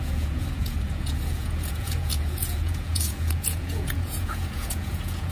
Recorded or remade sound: remade